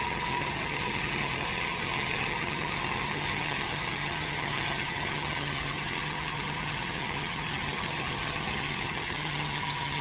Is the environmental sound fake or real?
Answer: fake